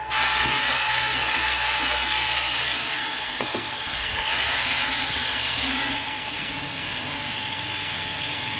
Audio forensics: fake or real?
fake